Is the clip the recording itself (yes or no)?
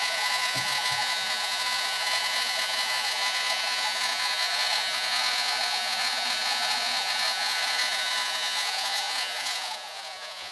no